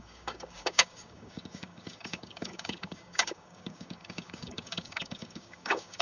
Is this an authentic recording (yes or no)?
no